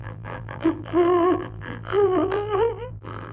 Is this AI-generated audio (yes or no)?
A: yes